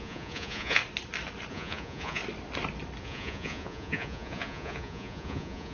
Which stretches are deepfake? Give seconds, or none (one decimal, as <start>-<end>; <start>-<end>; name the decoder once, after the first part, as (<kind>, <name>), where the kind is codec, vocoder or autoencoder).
0.0-0.8 (vocoder, Vocos); 1.5-2.2; 3.0-5.7